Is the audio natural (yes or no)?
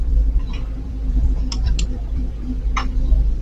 no